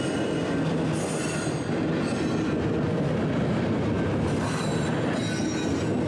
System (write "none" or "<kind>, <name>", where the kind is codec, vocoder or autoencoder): none